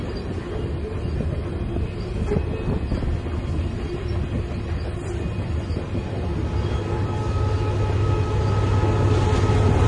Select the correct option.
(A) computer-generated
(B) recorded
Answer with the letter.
B